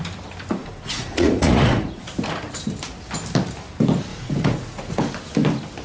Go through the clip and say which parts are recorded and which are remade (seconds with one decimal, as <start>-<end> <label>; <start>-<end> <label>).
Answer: 0.0-0.6 recorded; 0.6-2.0 remade; 2.0-4.1 recorded; 4.1-5.0 remade; 5.0-5.8 recorded